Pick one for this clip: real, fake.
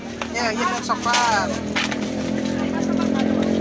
real